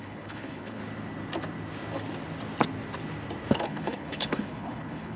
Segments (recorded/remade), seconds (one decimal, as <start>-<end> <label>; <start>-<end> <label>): 0.0-0.8 remade; 0.8-3.5 recorded; 3.5-5.2 remade